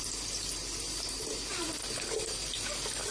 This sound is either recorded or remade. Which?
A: recorded